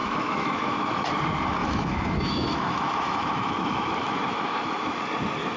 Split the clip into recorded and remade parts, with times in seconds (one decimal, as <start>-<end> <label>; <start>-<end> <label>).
0.0-1.2 remade; 1.2-1.6 recorded; 1.6-5.0 remade; 5.0-5.6 recorded